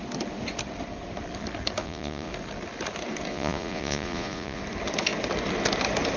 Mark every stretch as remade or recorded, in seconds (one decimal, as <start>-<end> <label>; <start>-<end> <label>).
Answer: 0.0-1.8 recorded; 1.8-2.3 remade; 2.3-3.3 recorded; 3.3-4.6 remade; 4.6-6.2 recorded